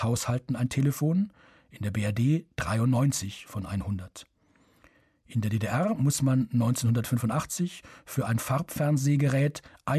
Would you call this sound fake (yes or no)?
no